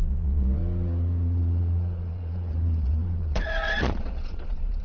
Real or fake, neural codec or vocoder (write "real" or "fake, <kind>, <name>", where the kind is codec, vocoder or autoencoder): fake, vocoder, Vocos